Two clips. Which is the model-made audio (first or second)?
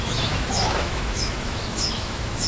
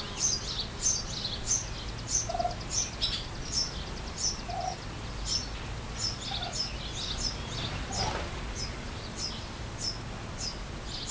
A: first